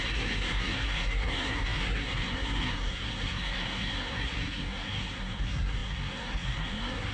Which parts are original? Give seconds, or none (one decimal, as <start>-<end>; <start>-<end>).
none